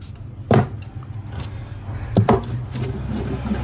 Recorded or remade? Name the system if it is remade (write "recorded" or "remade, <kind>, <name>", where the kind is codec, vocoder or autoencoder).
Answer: recorded